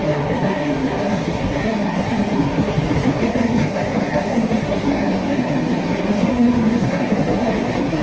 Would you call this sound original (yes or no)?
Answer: no